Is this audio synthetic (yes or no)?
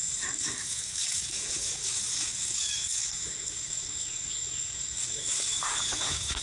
yes